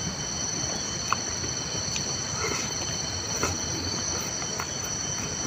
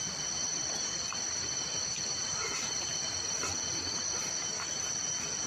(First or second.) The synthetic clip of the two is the second